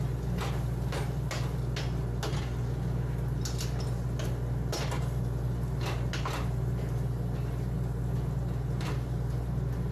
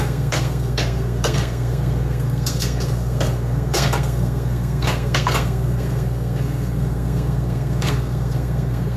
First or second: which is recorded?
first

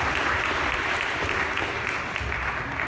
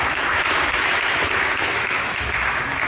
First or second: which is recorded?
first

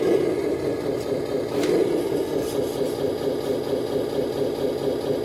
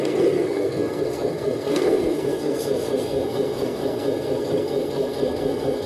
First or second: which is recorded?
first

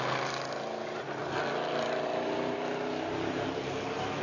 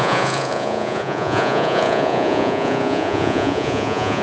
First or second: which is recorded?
first